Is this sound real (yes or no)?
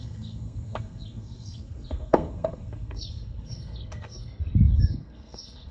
no